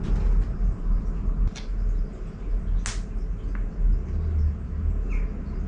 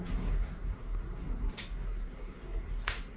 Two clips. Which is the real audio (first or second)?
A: first